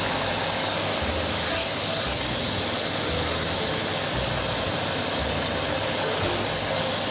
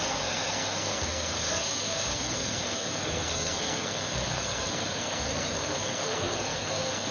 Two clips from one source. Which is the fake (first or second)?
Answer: second